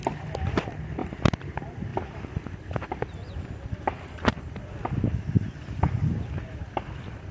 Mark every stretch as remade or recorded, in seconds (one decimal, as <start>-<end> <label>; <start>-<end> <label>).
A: 0.0-7.3 recorded